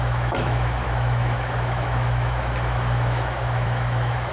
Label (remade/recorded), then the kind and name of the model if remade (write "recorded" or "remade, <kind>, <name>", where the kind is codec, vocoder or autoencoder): remade, autoencoder, DAC-VAE